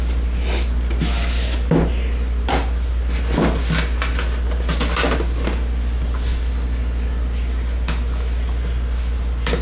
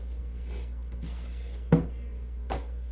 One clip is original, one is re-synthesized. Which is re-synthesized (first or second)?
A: second